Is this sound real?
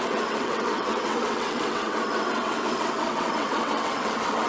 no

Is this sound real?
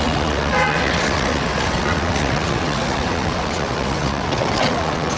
no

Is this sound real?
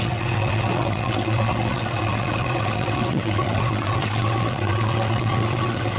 no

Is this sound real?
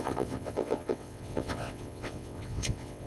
no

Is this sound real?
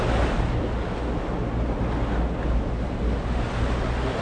yes